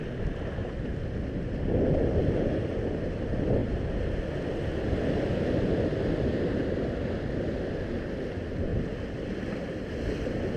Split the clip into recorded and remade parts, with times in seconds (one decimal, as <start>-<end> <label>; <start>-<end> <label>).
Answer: 0.0-10.6 recorded